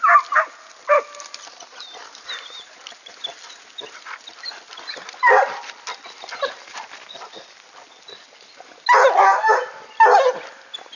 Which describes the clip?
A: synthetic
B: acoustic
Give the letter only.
B